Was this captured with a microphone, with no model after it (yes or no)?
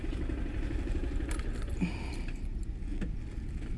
yes